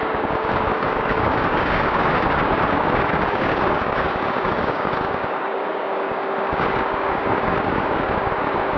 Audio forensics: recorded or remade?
remade